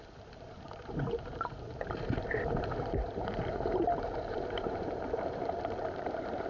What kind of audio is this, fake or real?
fake